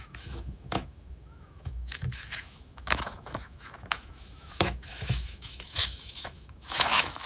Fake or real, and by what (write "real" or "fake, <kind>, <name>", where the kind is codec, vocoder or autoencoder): fake, autoencoder, DAC-VAE